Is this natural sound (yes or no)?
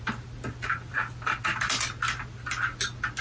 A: yes